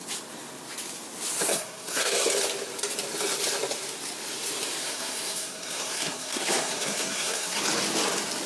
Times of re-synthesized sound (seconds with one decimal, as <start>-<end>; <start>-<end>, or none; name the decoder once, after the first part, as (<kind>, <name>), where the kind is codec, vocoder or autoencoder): 1.5-2.3 (codec, SNAC); 4.8-7.6